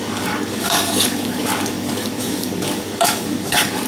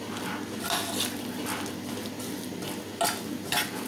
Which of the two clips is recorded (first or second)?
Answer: second